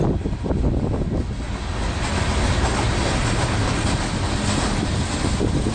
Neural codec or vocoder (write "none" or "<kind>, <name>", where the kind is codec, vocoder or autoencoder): none